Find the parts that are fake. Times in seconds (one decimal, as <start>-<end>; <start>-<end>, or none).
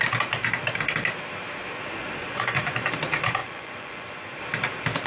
2.2-2.9; 3.4-4.4